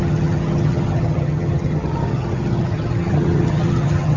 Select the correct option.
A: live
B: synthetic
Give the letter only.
B